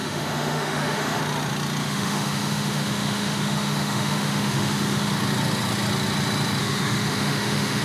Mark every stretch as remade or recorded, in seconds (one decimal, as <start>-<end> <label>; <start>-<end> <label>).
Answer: 0.0-1.2 remade; 1.2-1.8 recorded; 1.8-5.1 remade; 5.1-6.6 recorded; 6.6-7.8 remade